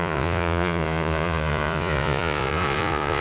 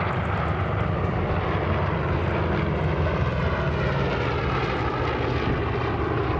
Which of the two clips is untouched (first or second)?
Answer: second